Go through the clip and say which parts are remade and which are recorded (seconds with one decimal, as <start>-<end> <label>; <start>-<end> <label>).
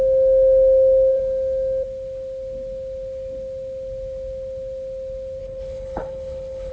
0.0-5.4 recorded; 5.4-6.7 remade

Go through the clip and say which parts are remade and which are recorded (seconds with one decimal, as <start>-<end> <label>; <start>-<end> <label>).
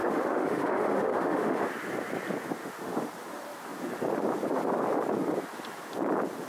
0.0-1.7 remade; 1.7-2.6 recorded; 2.6-3.1 remade; 3.1-6.5 recorded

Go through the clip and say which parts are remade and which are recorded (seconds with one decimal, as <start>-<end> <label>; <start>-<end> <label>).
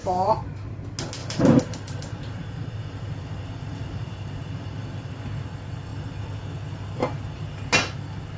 0.0-0.5 remade; 0.5-1.2 recorded; 1.2-5.1 remade; 5.1-8.4 recorded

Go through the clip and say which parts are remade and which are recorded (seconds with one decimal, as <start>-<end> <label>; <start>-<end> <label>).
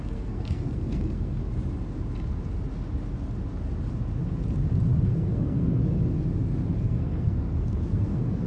0.0-1.4 remade; 1.4-5.0 recorded; 5.0-5.8 remade; 5.8-6.8 recorded; 6.8-8.5 remade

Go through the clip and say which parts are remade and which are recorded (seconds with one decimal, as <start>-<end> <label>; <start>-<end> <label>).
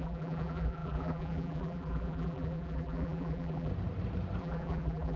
0.0-3.7 remade; 3.7-4.4 recorded; 4.4-5.2 remade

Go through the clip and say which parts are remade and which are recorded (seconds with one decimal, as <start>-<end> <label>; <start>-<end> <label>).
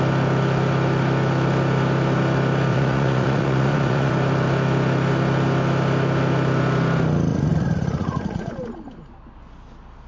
0.0-2.7 recorded; 2.7-4.1 remade; 4.1-7.3 recorded; 7.3-8.5 remade; 8.5-10.1 recorded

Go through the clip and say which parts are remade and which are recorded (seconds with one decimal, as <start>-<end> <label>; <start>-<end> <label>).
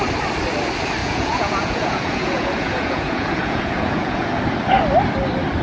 0.0-1.0 recorded; 1.0-4.4 remade; 4.4-5.6 recorded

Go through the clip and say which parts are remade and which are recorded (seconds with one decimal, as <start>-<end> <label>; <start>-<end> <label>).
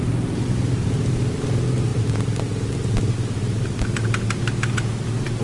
0.0-5.4 recorded